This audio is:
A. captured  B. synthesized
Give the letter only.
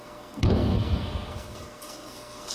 B